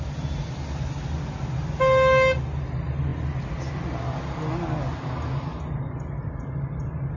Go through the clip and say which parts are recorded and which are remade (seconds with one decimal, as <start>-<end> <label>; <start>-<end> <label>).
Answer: 0.0-7.2 recorded